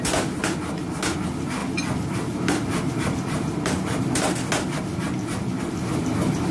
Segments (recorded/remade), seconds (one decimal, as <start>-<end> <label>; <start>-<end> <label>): 0.0-1.6 recorded; 1.6-4.0 remade; 4.0-6.5 recorded